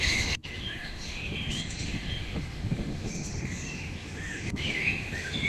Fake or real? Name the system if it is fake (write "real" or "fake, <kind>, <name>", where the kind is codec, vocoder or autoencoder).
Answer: fake, autoencoder, DAC-VAE